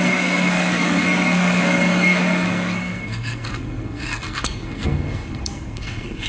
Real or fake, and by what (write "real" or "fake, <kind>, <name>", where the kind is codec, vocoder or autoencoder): fake, codec, SNAC